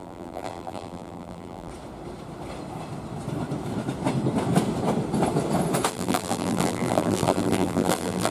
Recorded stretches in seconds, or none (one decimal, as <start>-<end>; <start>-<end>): 1.7-5.9